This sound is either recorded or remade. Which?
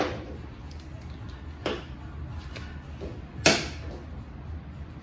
recorded